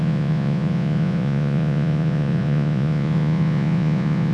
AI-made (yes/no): yes